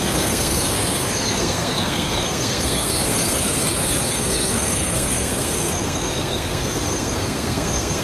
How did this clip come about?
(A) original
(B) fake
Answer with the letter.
B